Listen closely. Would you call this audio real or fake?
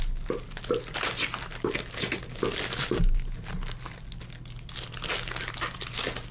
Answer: real